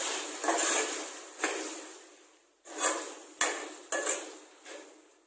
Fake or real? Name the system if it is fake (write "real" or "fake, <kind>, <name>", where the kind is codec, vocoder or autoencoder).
real